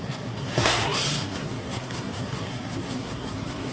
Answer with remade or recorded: remade